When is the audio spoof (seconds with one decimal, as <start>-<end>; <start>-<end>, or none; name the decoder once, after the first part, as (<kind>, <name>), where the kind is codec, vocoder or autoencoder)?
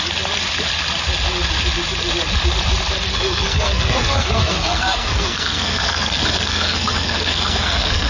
3.1-8.1 (codec, SNAC)